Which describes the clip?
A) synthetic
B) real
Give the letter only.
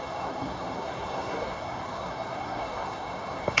A